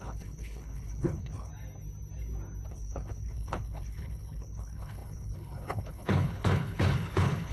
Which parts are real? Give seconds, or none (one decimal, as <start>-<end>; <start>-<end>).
1.5-2.7